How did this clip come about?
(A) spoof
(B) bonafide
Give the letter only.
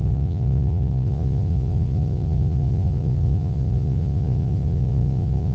A